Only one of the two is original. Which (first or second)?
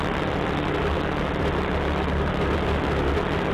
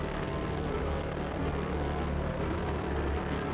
first